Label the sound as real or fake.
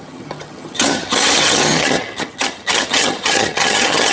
fake